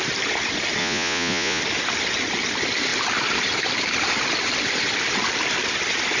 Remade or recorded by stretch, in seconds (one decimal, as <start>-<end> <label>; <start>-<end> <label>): 0.0-0.8 recorded; 0.8-1.6 remade; 1.6-6.2 recorded

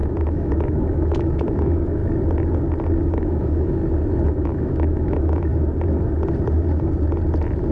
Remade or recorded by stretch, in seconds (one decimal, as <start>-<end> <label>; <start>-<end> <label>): 0.0-2.0 remade; 2.0-3.1 recorded; 3.1-3.8 remade; 3.8-4.3 recorded; 4.3-5.5 remade; 5.5-7.7 recorded

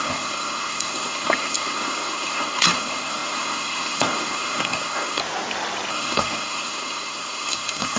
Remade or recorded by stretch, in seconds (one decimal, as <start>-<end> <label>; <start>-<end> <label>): 0.0-5.2 remade; 5.2-5.9 recorded; 5.9-8.0 remade

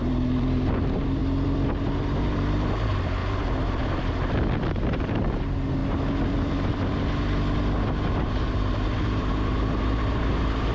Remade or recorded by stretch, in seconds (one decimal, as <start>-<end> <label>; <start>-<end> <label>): 0.0-1.2 remade; 1.2-2.2 recorded; 2.2-3.2 remade; 3.2-5.0 recorded; 5.0-5.8 remade; 5.8-8.2 recorded; 8.2-10.7 remade

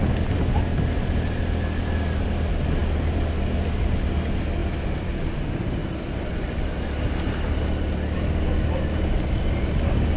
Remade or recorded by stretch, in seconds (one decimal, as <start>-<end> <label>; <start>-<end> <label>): 0.0-4.6 recorded; 4.6-5.3 remade; 5.3-5.8 recorded; 5.8-6.6 remade; 6.6-10.2 recorded